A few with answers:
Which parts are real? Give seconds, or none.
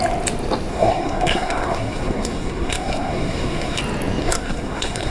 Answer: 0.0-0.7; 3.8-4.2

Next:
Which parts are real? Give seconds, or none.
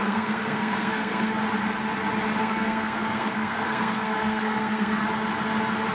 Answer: 1.4-2.4; 5.0-5.9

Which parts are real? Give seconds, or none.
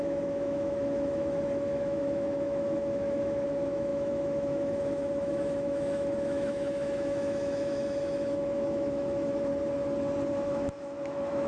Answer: 9.5-10.3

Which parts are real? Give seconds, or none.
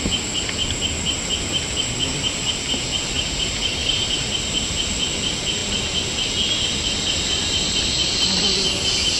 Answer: 0.0-3.8; 4.3-9.2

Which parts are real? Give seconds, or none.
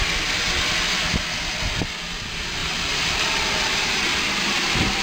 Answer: 0.0-2.6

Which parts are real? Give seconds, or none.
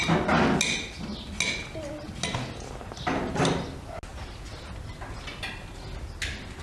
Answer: 0.0-6.6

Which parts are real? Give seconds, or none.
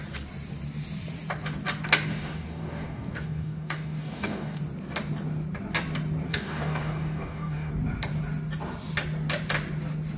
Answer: 0.0-2.1; 4.6-6.3; 7.7-10.2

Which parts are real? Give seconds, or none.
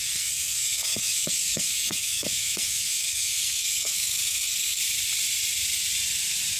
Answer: 4.8-6.6